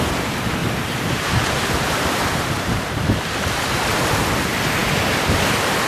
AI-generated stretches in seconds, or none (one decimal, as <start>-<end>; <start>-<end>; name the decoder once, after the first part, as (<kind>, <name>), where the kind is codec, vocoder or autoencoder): 0.6-3.0 (vocoder, BigVGAN v2)